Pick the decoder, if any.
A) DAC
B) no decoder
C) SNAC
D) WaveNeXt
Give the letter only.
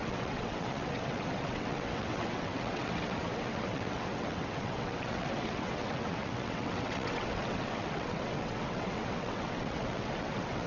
D